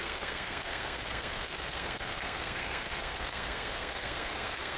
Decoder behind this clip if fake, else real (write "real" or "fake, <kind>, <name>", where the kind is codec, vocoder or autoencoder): fake, codec, SNAC